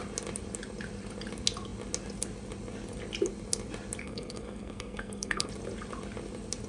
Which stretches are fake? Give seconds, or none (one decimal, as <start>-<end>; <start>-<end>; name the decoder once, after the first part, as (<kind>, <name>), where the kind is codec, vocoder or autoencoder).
4.0-5.5 (codec, SNAC)